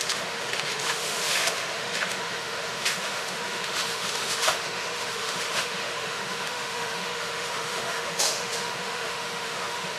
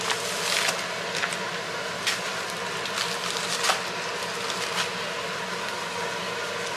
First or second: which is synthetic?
first